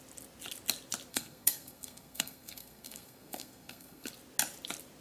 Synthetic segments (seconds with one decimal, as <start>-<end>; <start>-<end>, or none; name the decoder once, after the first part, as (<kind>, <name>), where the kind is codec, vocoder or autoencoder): 1.1-4.1 (codec, SNAC)